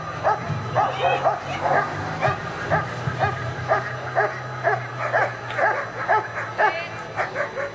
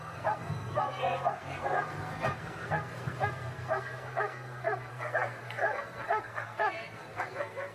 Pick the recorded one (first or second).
first